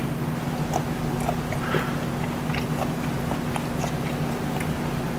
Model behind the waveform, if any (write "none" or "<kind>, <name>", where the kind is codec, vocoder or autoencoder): none